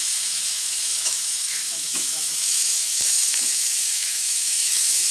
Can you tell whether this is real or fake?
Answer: fake